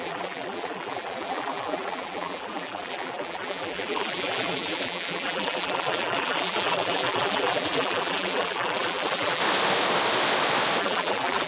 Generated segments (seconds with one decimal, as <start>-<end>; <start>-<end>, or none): 0.0-9.4; 10.8-11.5